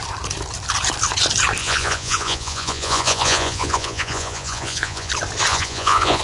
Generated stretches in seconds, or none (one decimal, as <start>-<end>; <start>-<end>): 1.6-5.1; 5.5-6.2